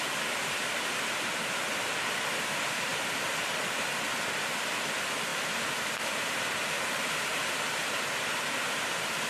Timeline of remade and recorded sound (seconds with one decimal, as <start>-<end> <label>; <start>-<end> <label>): 0.0-9.3 recorded